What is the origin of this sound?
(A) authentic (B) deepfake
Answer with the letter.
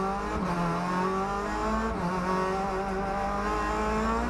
A